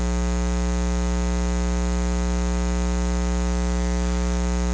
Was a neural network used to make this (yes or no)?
no